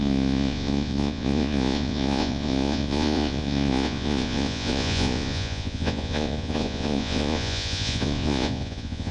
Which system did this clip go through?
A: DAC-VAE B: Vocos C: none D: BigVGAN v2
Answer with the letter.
B